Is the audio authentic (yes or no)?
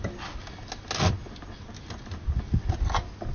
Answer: yes